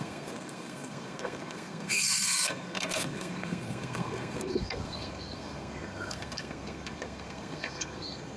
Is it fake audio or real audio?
fake